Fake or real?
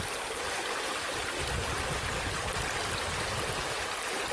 real